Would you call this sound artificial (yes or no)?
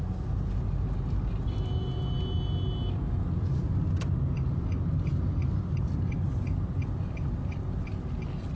no